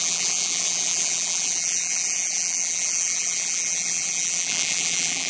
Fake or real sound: fake